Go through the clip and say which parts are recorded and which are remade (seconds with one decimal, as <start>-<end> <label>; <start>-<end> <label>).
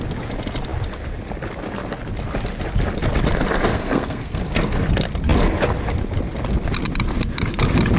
0.0-3.7 recorded; 3.7-4.4 remade; 4.4-8.0 recorded